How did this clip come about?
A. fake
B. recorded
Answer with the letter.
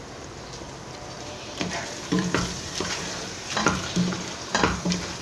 A